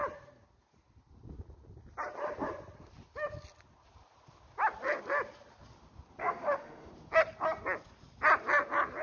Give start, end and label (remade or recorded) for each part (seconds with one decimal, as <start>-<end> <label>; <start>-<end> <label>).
0.0-6.2 recorded; 6.2-6.9 remade; 6.9-9.0 recorded